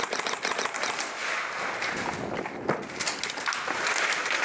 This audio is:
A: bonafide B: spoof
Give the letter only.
A